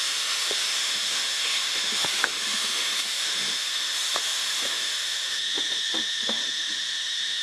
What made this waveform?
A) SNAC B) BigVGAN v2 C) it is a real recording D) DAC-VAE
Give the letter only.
D